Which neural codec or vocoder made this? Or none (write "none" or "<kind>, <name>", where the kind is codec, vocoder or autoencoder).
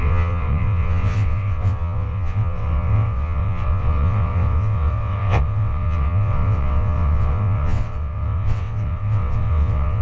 vocoder, WaveNeXt